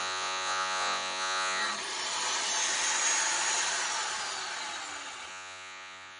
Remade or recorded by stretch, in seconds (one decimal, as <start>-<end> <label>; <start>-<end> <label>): 0.0-1.6 remade; 1.6-5.3 recorded; 5.3-6.2 remade